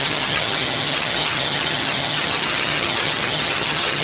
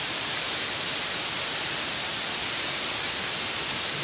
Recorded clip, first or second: second